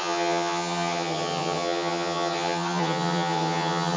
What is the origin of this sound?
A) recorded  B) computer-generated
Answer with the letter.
B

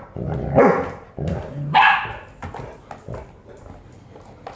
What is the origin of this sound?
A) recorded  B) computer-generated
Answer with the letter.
A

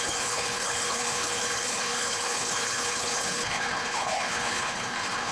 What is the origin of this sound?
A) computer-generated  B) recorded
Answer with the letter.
A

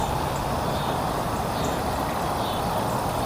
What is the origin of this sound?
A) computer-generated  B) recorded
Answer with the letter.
B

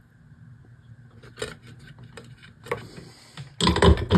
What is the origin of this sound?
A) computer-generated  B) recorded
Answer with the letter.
B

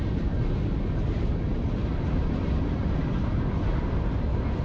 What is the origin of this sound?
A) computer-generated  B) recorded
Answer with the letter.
B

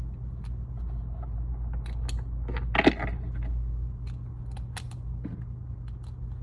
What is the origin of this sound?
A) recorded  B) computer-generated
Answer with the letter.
A